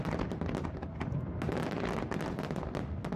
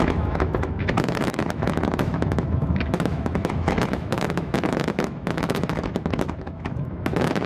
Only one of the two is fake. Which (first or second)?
second